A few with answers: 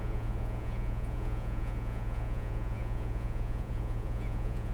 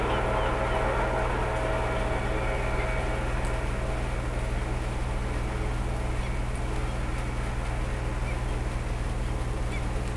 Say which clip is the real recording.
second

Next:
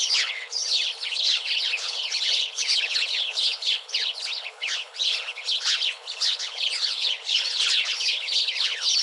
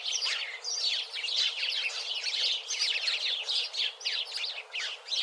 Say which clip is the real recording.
second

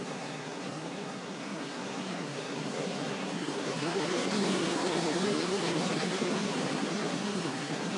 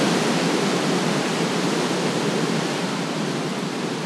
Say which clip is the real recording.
second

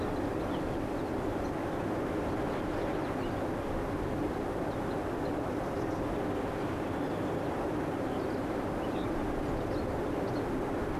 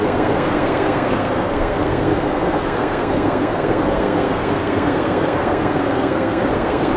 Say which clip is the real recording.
first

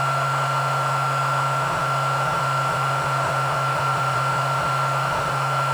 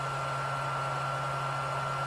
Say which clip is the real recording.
second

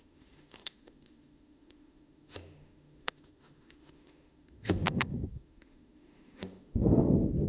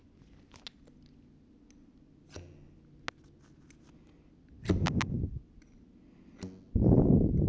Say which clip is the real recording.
second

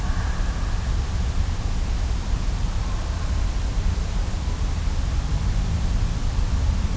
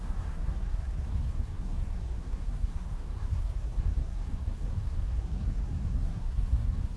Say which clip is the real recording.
first